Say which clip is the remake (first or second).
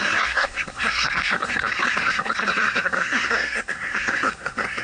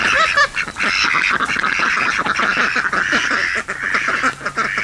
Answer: first